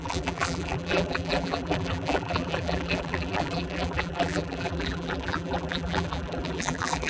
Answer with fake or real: fake